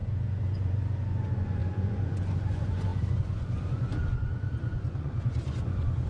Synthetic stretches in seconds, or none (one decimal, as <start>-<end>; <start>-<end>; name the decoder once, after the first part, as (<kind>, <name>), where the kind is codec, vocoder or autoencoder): 0.0-6.1 (vocoder, Vocos)